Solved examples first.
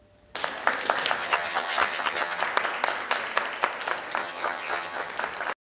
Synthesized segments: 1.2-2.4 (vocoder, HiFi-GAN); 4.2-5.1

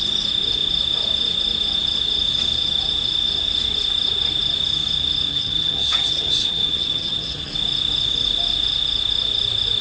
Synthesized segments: 5.3-7.5 (vocoder, HiFi-GAN)

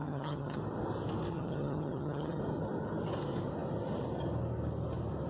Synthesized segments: 0.0-0.6 (vocoder, HiFi-GAN); 1.3-2.4

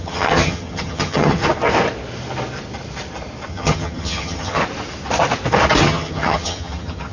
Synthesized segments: 0.0-1.4 (vocoder, HiFi-GAN); 3.5-4.6; 5.8-7.1

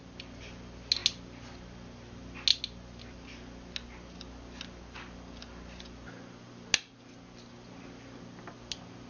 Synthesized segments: none

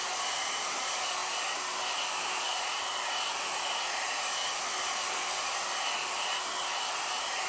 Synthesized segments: none